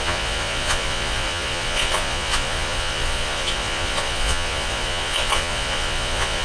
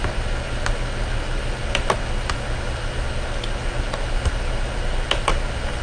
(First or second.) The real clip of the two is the second